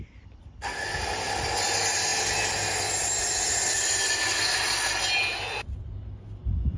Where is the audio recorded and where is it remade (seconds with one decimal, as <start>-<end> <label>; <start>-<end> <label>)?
0.0-6.8 recorded